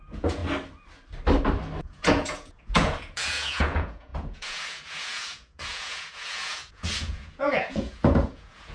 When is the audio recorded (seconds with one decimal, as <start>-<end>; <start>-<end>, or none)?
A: 0.4-1.8